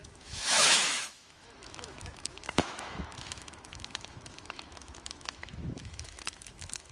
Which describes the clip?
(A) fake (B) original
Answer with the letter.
A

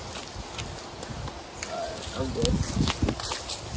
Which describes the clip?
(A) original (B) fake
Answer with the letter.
A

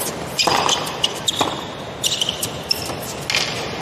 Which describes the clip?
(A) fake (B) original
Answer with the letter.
B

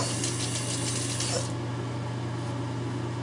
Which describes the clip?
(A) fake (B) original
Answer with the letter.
B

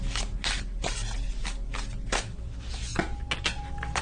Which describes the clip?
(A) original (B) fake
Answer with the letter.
A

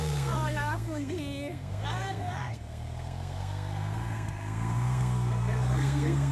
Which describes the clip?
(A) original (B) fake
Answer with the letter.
B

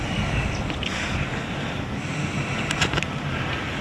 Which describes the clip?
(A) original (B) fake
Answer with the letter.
A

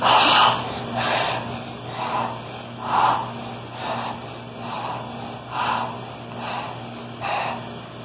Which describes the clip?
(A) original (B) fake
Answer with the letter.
A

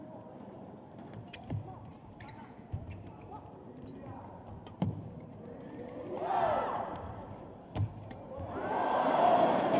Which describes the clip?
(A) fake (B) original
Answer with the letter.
A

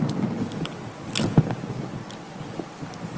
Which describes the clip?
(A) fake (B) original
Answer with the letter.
B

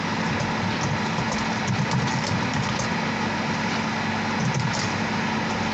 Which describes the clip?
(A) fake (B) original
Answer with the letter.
B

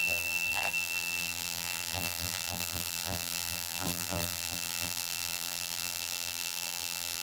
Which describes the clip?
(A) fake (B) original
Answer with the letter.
A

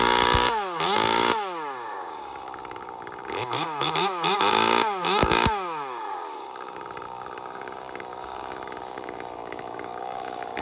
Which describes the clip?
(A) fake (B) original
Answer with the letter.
A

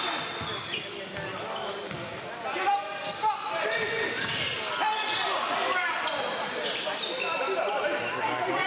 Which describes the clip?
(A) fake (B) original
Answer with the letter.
B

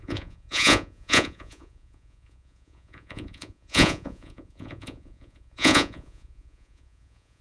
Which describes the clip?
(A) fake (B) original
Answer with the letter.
A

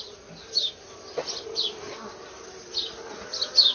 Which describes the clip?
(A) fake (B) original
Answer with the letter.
B